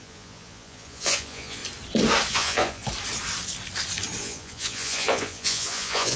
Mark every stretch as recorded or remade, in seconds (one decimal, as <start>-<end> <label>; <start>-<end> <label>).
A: 0.0-1.6 remade; 1.6-2.3 recorded; 2.3-2.8 remade; 2.8-4.2 recorded; 4.2-6.2 remade